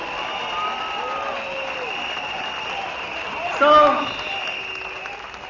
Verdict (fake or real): real